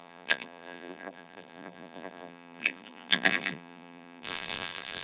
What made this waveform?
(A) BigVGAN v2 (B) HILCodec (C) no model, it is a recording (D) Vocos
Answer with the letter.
A